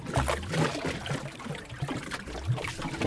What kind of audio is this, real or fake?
real